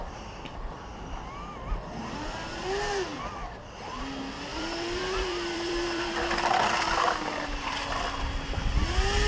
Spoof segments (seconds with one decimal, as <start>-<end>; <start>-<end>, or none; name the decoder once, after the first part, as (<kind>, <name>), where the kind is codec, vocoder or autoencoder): 0.9-1.8 (vocoder, BigVGAN v2); 3.1-4.0; 4.5-7.8